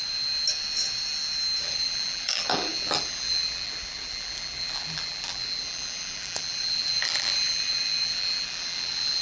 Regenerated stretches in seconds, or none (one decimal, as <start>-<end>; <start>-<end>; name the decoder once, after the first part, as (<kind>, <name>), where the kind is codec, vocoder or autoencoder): 1.6-9.2 (vocoder, BigVGAN v2)